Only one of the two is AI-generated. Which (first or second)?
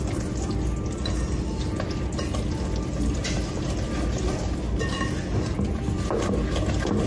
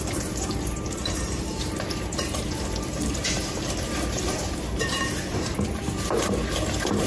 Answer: second